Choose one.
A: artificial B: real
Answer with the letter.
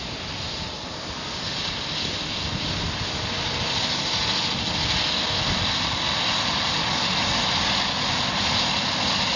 B